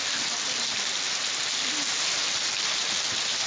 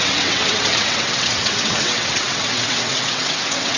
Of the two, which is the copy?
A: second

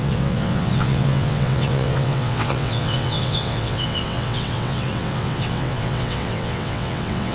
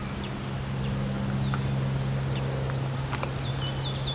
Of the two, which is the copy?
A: first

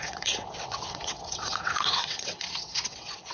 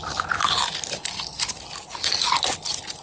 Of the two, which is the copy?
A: first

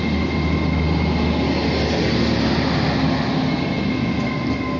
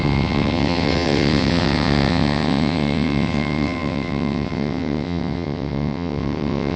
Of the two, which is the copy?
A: second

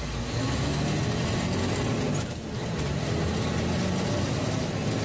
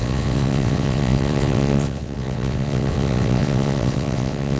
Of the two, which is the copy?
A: second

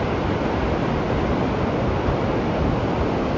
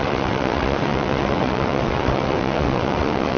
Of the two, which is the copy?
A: second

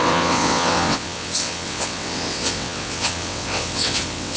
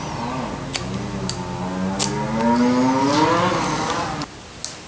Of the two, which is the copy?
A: first